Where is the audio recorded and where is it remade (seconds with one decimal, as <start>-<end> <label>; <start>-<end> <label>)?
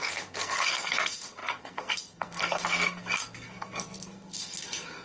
0.0-5.0 remade